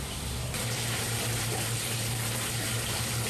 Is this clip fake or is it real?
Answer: real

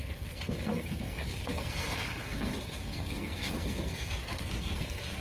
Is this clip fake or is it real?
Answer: fake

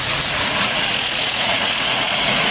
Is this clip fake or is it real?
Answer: fake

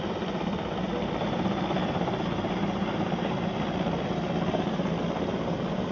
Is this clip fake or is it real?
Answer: fake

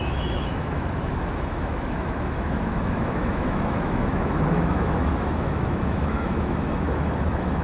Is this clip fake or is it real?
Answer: fake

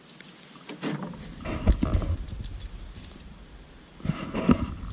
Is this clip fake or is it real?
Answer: real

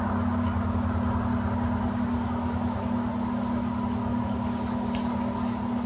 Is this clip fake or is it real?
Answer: real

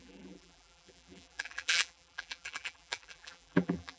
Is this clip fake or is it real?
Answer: fake